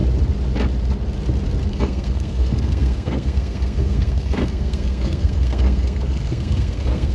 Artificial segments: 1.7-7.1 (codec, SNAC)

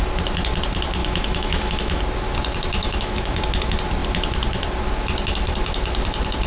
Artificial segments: 1.0-2.0 (autoencoder, DAC-VAE); 2.8-3.4

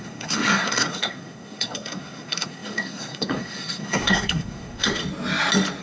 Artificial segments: 0.0-5.0 (codec, SNAC)

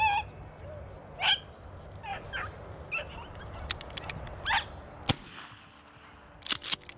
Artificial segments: none

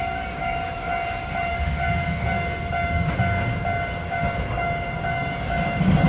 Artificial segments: 0.0-0.9 (codec, DAC); 1.5-6.1